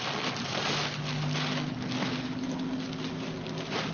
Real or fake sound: real